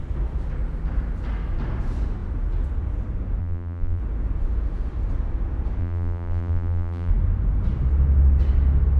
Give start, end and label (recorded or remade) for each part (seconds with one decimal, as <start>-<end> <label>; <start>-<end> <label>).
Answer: 0.0-3.4 recorded; 3.4-4.0 remade; 4.0-5.8 recorded; 5.8-7.1 remade; 7.1-9.0 recorded